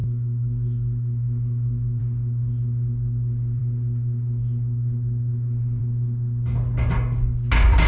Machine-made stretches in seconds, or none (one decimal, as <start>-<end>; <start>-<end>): 0.0-2.0